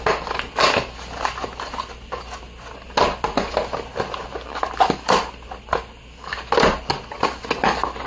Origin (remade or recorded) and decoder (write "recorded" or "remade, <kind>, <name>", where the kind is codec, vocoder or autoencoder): recorded